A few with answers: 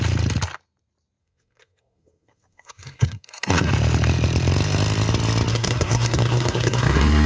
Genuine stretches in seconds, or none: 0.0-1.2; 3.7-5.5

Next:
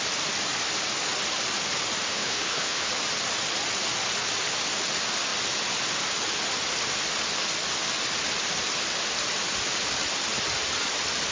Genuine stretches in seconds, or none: 0.0-2.1; 2.9-11.3

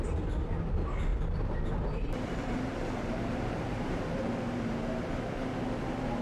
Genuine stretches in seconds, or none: 0.0-1.1; 4.8-6.2